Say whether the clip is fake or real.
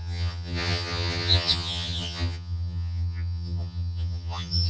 fake